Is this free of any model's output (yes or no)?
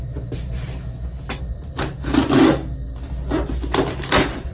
yes